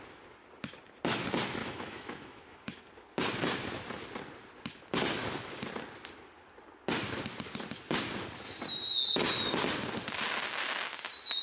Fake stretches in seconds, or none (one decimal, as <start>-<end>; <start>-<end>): 1.6-2.8